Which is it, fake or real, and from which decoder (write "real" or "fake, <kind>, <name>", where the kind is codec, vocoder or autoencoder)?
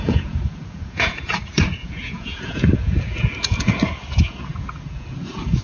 fake, vocoder, Vocos